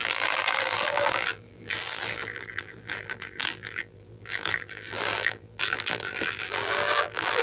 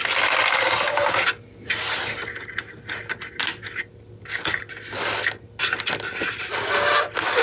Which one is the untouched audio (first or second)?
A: second